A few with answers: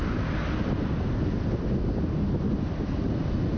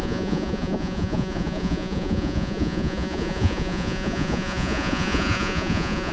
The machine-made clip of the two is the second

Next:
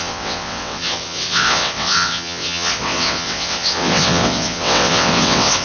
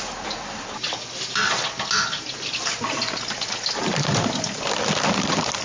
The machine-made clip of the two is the first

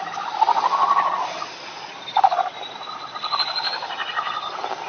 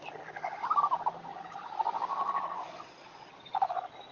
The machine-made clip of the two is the first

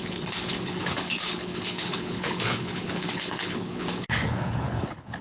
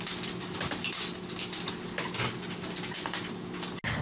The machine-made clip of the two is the first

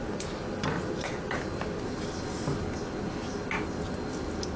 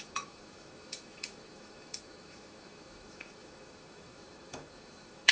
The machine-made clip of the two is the second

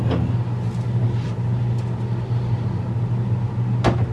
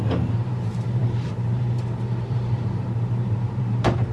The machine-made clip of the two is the second